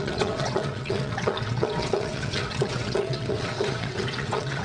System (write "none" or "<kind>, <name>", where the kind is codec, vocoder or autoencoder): vocoder, WaveNeXt